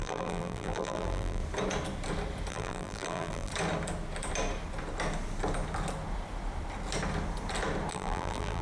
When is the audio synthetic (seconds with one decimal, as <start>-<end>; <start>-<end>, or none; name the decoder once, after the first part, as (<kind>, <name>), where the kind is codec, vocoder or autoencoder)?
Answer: 0.0-1.4 (vocoder, BigVGAN v2); 2.5-3.5; 7.9-8.6